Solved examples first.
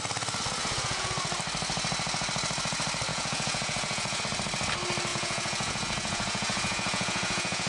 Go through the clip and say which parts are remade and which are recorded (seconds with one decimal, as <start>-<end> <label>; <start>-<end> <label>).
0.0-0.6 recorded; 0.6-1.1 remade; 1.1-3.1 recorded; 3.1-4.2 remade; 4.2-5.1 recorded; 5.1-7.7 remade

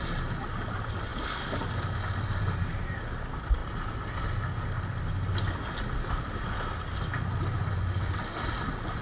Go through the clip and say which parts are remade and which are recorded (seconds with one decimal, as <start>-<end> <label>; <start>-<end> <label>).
0.0-9.0 recorded

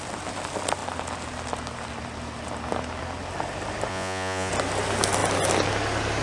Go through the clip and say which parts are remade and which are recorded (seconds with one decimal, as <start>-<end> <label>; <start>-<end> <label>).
0.0-3.9 recorded; 3.9-4.5 remade; 4.5-6.2 recorded

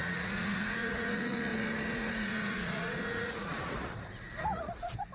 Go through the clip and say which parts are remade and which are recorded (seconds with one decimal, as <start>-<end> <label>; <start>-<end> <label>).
0.0-5.1 remade

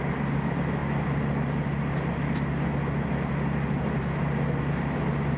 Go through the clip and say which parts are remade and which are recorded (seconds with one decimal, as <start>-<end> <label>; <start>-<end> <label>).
0.0-5.4 recorded

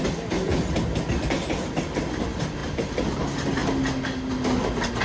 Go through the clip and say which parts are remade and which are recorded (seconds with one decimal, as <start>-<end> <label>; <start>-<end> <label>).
0.0-5.0 recorded

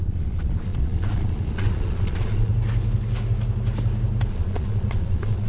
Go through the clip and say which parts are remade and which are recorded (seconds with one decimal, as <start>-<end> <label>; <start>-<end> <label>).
0.0-2.5 remade; 2.5-4.3 recorded; 4.3-5.5 remade

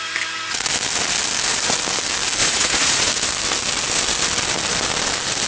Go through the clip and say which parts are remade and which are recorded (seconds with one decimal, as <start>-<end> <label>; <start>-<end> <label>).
0.0-2.4 recorded; 2.4-3.1 remade; 3.1-5.5 recorded